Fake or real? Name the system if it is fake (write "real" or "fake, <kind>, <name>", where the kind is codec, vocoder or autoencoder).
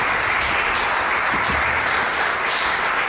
real